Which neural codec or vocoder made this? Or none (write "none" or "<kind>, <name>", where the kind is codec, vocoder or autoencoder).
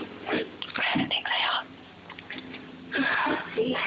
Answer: none